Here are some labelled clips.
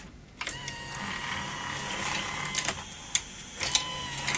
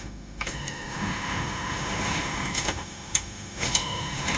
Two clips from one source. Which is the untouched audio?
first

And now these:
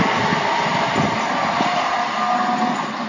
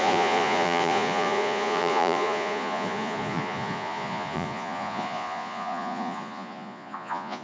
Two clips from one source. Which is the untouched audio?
first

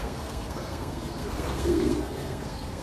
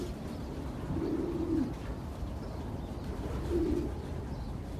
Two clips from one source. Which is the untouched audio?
second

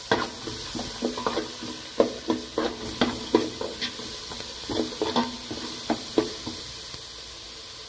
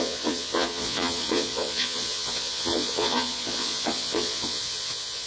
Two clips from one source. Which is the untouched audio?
first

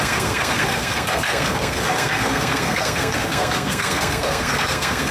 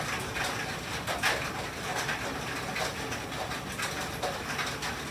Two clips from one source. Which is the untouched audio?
second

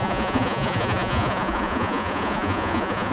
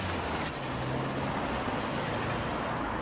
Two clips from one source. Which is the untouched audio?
second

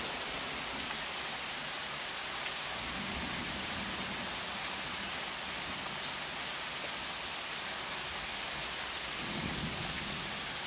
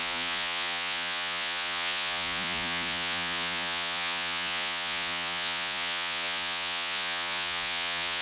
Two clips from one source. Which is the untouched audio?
first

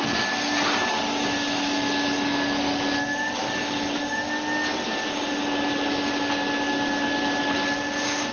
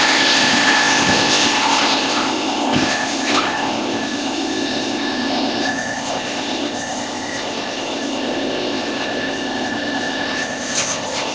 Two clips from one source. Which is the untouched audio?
first